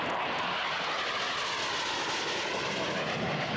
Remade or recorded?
recorded